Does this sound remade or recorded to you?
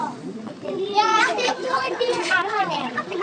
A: remade